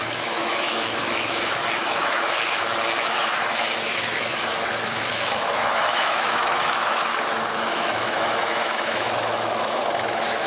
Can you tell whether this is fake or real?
fake